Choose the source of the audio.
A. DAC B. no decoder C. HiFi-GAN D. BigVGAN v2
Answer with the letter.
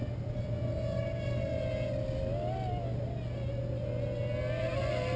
B